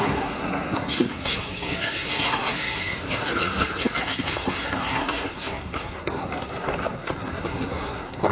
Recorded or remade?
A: remade